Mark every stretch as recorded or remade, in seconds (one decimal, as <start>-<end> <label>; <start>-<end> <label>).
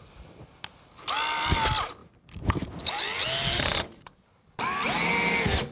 0.0-5.7 recorded